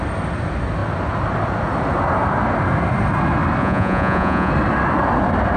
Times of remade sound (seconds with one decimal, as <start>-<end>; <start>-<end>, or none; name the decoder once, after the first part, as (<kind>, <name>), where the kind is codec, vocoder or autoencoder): 3.6-4.5 (vocoder, Vocos)